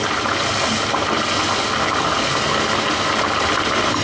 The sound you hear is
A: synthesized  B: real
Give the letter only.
B